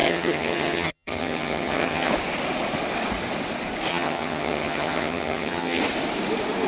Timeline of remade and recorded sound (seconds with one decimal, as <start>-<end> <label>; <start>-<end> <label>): 0.0-2.1 remade; 2.1-3.9 recorded; 3.9-5.8 remade; 5.8-6.7 recorded